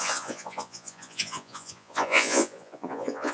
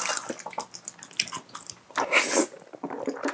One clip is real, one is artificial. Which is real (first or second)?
second